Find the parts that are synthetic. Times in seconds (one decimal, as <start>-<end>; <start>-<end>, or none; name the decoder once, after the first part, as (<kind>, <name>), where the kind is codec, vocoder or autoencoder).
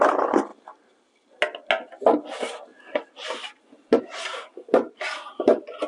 0.0-0.5 (vocoder, BigVGAN v2); 2.0-2.7; 4.0-5.9